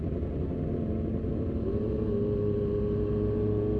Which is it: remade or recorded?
recorded